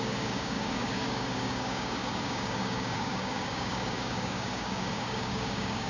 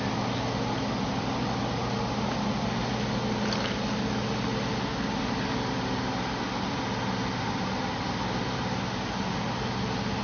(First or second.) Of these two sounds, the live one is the second